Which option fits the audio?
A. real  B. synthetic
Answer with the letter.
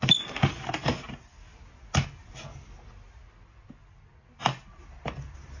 A